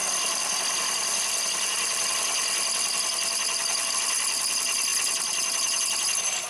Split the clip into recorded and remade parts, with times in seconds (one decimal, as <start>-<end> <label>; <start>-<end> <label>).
0.0-6.5 recorded